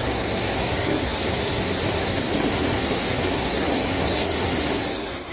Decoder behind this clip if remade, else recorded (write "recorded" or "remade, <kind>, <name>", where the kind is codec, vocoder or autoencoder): remade, codec, SNAC